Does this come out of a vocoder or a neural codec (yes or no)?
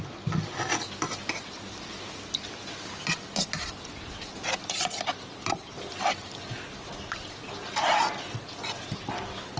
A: no